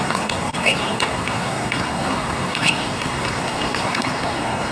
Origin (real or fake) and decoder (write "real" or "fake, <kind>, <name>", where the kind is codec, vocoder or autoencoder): fake, codec, SNAC